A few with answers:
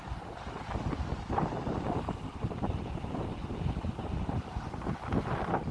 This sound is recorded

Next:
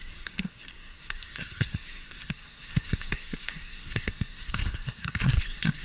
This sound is remade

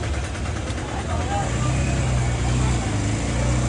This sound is recorded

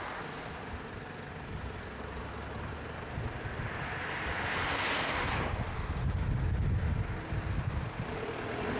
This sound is recorded